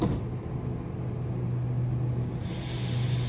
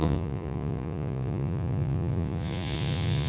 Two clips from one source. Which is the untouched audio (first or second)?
first